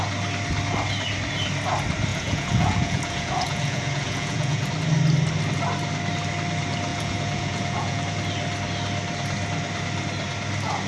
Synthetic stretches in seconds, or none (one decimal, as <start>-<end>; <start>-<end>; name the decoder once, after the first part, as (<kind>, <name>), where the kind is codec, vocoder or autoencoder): 2.1-4.7 (vocoder, Vocos); 6.9-8.0